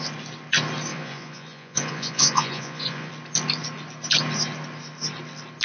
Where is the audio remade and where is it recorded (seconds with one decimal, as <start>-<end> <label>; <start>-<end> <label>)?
0.0-0.9 recorded; 0.9-3.1 remade; 3.1-5.6 recorded